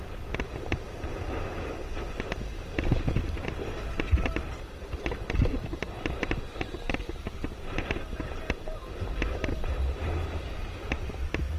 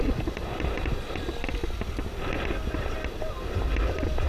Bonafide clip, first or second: second